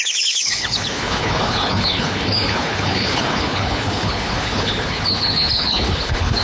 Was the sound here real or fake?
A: fake